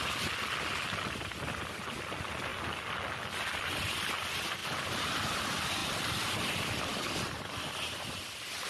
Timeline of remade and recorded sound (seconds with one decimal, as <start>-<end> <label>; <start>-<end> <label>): 0.0-4.6 recorded; 4.6-5.1 remade; 5.1-5.8 recorded; 5.8-6.5 remade; 6.5-8.7 recorded